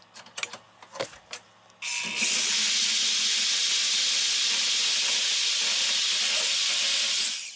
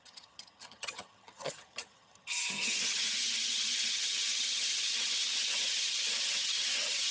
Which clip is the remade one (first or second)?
second